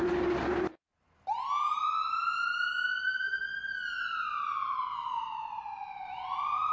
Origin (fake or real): real